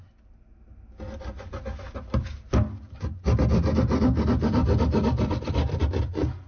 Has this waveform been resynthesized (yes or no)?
no